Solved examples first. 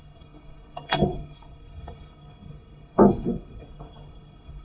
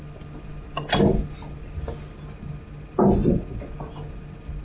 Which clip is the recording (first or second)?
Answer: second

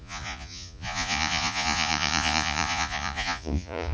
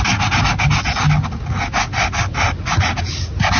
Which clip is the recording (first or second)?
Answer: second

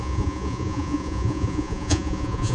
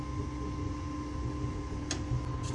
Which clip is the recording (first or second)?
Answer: second